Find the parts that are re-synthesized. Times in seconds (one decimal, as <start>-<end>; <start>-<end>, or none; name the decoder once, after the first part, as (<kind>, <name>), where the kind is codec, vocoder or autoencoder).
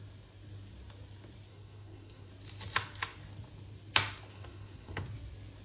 1.5-2.3 (codec, SNAC); 4.3-5.0